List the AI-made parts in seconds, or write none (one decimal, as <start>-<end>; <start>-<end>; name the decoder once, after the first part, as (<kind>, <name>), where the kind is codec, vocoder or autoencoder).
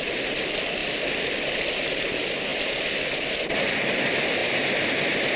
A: none